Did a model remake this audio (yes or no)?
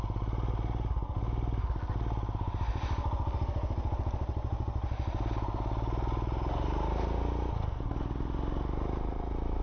no